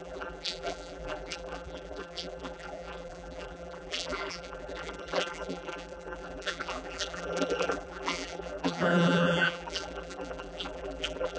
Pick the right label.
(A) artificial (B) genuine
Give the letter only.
A